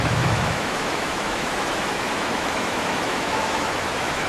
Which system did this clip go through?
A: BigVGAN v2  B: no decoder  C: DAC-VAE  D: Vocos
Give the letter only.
C